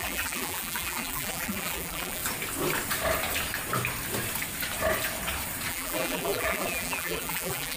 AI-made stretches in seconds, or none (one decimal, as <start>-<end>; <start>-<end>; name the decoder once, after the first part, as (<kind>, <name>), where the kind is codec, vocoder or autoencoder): 0.0-2.2 (vocoder, BigVGAN v2); 5.7-7.8